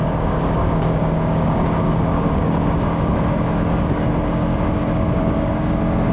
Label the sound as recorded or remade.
remade